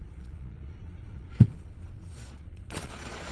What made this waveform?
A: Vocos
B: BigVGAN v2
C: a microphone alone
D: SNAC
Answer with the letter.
A